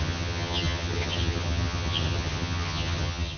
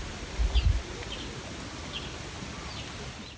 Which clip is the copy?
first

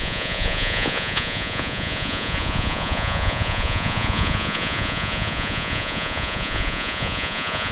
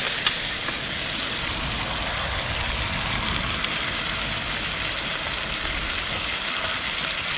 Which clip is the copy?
first